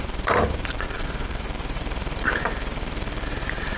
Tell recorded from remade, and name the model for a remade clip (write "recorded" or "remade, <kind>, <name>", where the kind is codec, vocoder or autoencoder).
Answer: remade, vocoder, BigVGAN v2